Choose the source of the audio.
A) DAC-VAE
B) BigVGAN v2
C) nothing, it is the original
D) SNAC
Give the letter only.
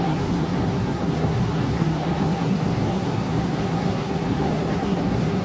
D